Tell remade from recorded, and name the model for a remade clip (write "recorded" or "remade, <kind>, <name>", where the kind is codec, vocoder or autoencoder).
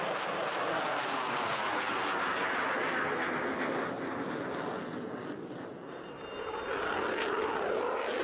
recorded